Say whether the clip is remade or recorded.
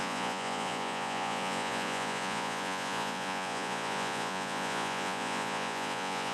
remade